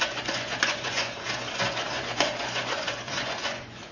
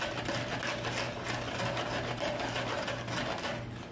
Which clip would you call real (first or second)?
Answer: second